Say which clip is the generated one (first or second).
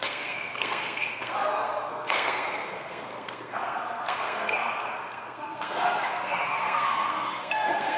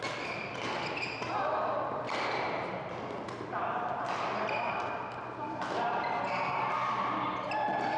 first